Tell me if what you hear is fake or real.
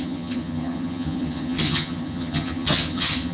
fake